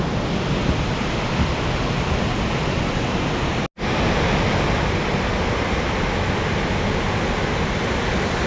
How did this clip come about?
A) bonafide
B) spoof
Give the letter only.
A